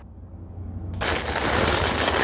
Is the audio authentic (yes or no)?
yes